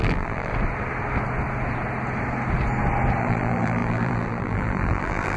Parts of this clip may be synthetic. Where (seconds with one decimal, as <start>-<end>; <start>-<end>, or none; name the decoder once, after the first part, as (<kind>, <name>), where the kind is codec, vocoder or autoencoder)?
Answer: 0.0-0.5 (vocoder, BigVGAN v2); 3.2-5.4